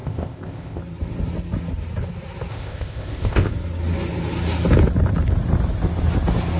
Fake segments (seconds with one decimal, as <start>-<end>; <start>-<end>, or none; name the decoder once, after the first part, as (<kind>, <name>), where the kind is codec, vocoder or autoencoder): 0.0-0.8 (codec, ZipCodec); 2.5-3.5